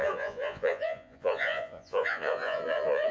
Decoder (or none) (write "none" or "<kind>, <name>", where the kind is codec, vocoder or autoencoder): vocoder, Vocos